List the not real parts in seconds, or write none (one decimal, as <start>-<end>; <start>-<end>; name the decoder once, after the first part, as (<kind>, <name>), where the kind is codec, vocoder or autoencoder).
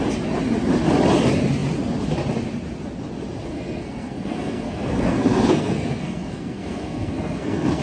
3.5-7.8 (codec, SNAC)